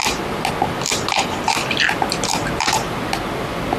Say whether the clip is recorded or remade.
recorded